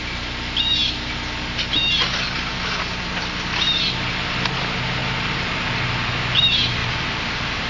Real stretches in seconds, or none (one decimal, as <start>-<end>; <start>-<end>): 0.0-6.8